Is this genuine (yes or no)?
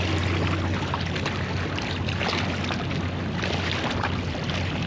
yes